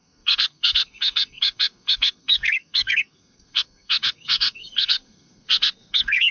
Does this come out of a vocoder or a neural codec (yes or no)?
yes